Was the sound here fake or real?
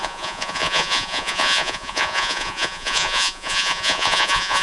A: fake